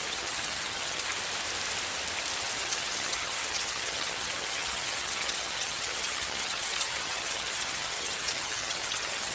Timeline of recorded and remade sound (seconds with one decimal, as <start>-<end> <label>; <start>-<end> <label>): 0.0-1.1 remade; 1.1-2.4 recorded; 2.4-9.3 remade